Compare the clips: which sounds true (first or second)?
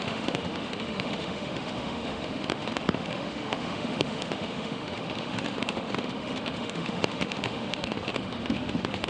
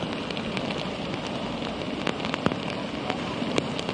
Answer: second